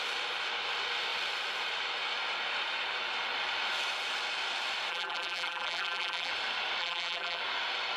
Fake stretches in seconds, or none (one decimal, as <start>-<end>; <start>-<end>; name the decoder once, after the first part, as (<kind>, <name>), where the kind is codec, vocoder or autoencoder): 4.9-6.3 (vocoder, BigVGAN v2); 6.8-7.4